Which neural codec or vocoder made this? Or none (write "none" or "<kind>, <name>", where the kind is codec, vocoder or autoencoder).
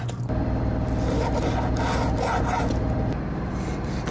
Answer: none